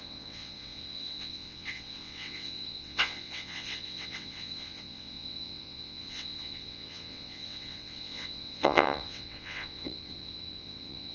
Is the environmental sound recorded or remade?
remade